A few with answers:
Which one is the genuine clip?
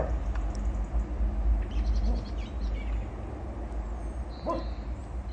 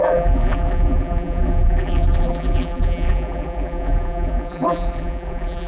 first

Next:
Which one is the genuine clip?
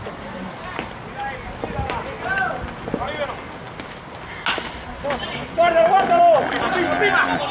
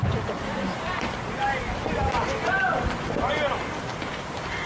first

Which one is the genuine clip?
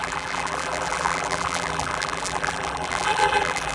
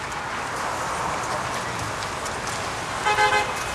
second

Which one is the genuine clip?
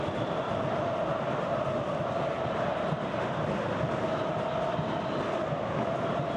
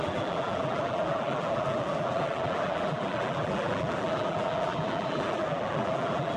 first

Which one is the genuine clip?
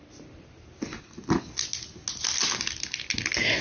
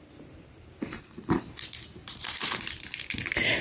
first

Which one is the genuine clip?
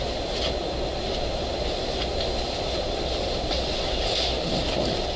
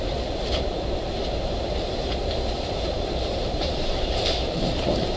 first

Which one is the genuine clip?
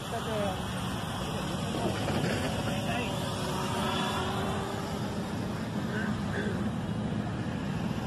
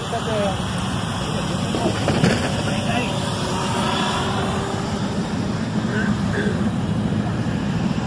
first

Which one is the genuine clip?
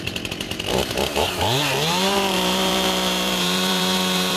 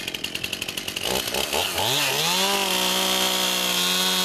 second